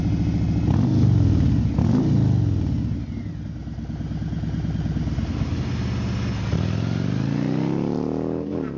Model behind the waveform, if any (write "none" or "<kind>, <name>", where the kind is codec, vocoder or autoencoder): none